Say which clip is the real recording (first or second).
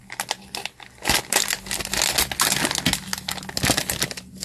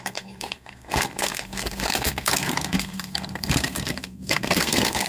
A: first